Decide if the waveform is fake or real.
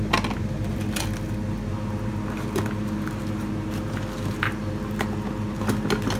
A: real